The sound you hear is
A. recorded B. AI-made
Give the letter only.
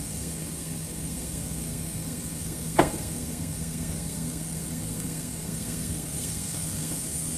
B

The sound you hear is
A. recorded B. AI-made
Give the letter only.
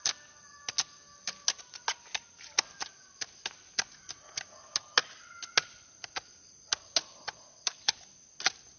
A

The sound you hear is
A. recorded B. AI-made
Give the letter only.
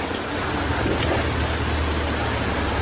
A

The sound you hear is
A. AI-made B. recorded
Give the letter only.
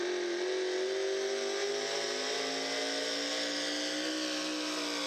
B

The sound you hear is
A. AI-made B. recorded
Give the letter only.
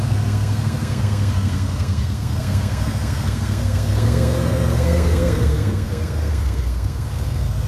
A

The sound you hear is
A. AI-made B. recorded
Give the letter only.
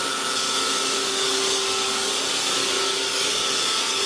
A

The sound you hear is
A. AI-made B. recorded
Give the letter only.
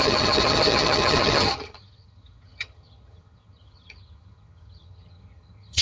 A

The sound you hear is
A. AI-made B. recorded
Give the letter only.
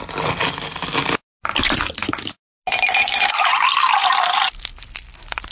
B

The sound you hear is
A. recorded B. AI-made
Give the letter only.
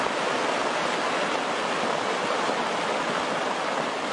A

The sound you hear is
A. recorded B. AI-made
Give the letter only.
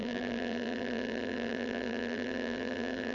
B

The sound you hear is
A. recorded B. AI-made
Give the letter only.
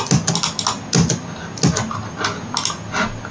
A